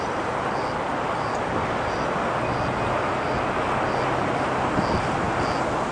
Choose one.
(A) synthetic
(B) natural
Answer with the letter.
B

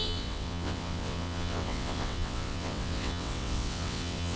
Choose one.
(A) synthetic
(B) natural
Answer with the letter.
A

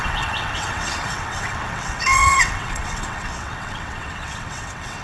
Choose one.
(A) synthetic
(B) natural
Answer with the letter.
A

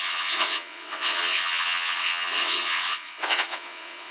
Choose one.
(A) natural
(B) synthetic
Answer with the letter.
B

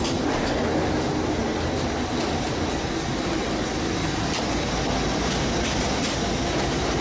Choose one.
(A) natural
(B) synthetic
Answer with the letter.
A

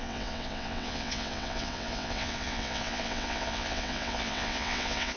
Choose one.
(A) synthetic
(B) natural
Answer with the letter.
A